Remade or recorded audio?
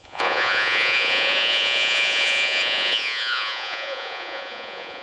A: remade